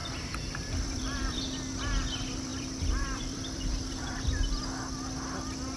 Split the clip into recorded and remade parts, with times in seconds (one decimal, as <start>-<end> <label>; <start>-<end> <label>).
0.0-1.4 remade; 1.4-2.5 recorded; 2.5-4.6 remade; 4.6-5.8 recorded